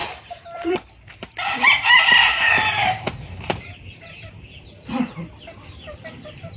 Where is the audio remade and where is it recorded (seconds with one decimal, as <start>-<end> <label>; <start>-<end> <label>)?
0.0-0.7 remade; 0.7-2.3 recorded; 2.3-5.4 remade; 5.4-6.6 recorded